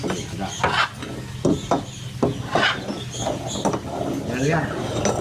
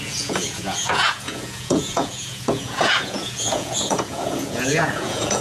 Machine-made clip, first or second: second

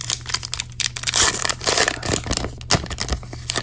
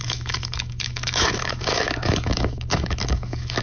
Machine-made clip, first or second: second